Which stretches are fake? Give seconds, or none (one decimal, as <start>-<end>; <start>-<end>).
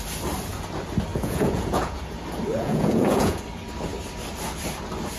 1.1-2.0; 2.5-3.4